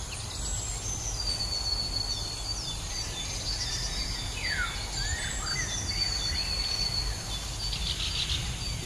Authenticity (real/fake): real